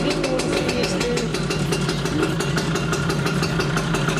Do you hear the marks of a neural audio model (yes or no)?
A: no